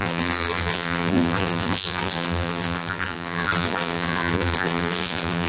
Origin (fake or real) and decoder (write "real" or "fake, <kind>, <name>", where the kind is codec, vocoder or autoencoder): fake, vocoder, BigVGAN v2